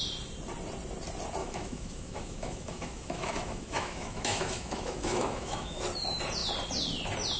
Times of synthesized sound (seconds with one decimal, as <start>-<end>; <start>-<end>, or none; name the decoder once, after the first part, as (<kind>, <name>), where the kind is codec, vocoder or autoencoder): 1.4-5.8 (autoencoder, DAC-VAE)